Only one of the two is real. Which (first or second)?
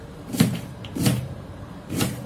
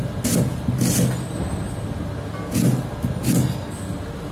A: second